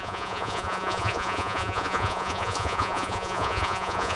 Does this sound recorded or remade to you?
remade